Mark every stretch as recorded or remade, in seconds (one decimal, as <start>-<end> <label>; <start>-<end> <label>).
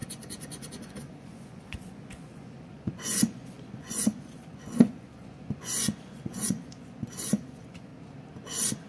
0.0-7.9 remade; 7.9-8.9 recorded